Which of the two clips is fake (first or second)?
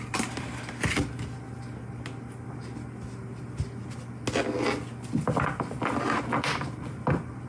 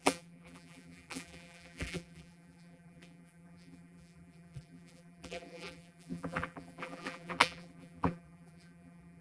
second